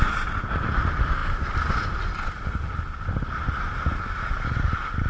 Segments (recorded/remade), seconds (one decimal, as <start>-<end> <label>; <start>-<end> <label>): 0.0-5.1 recorded

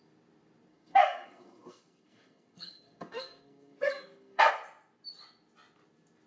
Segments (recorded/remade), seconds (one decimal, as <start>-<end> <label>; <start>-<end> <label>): 0.0-0.7 recorded; 0.7-4.5 remade; 4.5-6.3 recorded

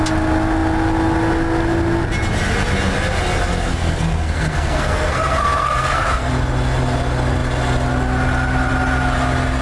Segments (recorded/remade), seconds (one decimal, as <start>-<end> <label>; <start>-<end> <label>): 0.0-3.5 recorded; 3.5-6.3 remade; 6.3-9.6 recorded

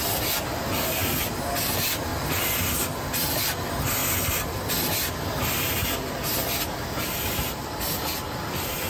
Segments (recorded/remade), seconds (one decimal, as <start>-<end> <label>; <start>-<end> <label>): 0.0-8.9 recorded